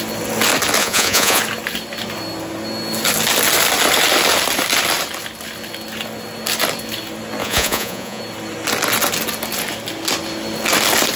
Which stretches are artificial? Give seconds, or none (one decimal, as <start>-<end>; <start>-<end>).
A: 0.8-1.4; 7.4-8.2